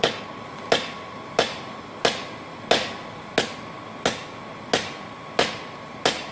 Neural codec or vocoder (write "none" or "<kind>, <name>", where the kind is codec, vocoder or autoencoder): none